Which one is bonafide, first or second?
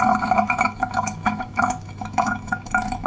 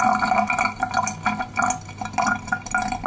second